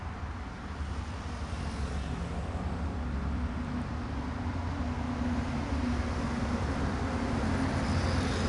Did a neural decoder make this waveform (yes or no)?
no